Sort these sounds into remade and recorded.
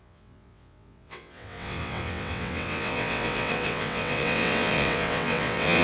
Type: remade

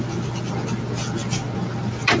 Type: recorded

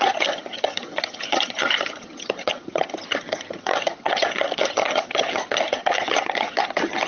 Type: remade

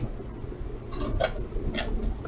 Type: recorded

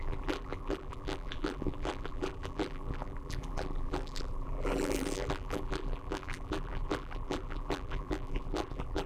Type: remade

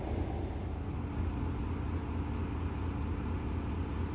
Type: recorded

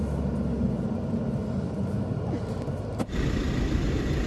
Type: recorded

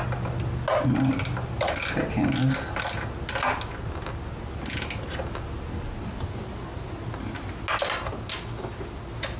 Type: recorded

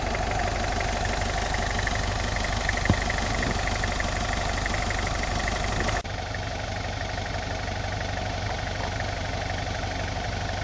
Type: recorded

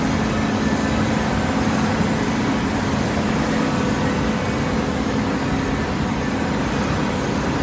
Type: recorded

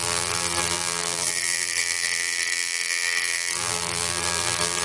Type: remade